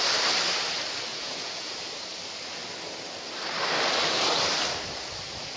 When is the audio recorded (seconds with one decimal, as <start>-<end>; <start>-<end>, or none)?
0.0-1.1; 1.7-5.6